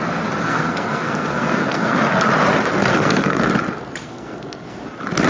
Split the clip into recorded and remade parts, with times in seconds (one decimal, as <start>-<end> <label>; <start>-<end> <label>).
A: 0.0-0.4 recorded; 0.4-2.0 remade; 2.0-2.9 recorded; 2.9-3.5 remade; 3.5-4.0 recorded; 4.0-4.8 remade; 4.8-5.3 recorded

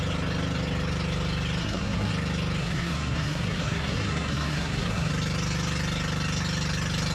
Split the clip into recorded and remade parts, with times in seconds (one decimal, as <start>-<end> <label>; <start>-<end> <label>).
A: 0.0-1.6 recorded; 1.6-2.1 remade; 2.1-2.6 recorded; 2.6-5.1 remade; 5.1-7.1 recorded

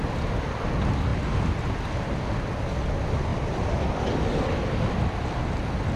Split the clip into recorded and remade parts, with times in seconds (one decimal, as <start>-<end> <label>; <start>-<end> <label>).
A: 0.0-6.0 recorded

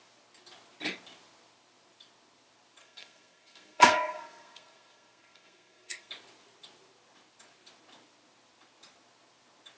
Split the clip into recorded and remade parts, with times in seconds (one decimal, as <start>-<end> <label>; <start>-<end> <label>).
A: 0.0-2.8 recorded; 2.8-6.1 remade; 6.1-9.8 recorded

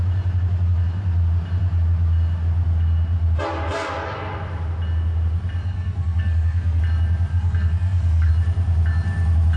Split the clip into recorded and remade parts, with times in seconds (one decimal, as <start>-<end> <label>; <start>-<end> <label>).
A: 0.0-5.6 recorded; 5.6-6.8 remade; 6.8-7.3 recorded; 7.3-8.3 remade; 8.3-9.6 recorded

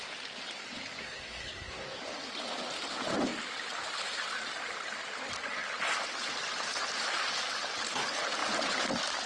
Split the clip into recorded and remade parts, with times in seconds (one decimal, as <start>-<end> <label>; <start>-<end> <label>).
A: 0.0-1.0 recorded; 1.0-2.0 remade; 2.0-9.3 recorded